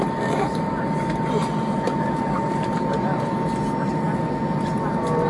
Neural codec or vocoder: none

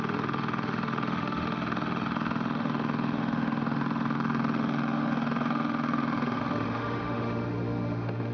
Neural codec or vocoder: autoencoder, DAC-VAE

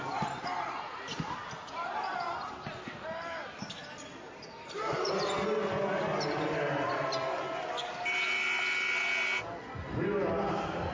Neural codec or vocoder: none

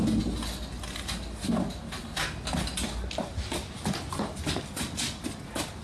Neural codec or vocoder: none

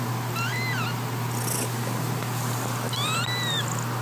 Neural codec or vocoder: none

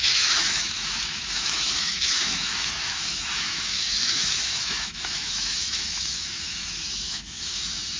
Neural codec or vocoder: autoencoder, DAC-VAE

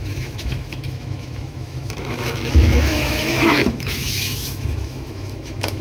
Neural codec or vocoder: autoencoder, DAC-VAE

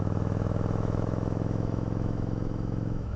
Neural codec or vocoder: autoencoder, DAC-VAE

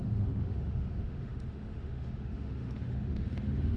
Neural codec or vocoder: autoencoder, DAC-VAE